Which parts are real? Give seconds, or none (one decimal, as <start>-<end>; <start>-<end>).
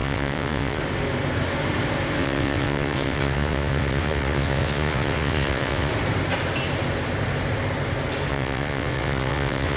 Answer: 0.8-2.2; 5.9-8.3